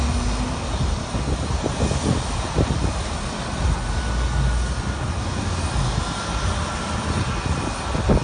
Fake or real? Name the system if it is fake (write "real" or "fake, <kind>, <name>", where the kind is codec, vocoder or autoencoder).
real